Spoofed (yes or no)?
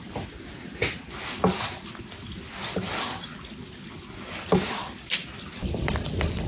no